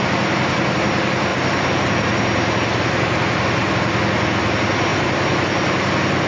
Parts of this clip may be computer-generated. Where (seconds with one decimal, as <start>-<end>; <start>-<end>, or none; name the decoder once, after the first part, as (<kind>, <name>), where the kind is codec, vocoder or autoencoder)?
none